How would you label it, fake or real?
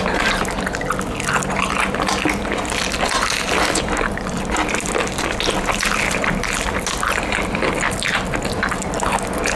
real